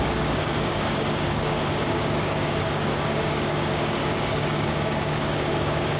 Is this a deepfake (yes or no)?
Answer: yes